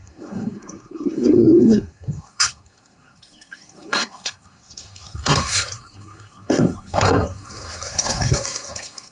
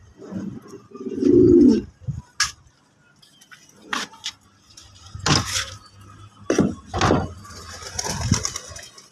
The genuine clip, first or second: second